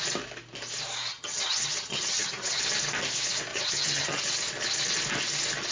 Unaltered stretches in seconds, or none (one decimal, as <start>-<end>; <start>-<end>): 0.0-1.1; 2.6-3.5; 4.2-5.7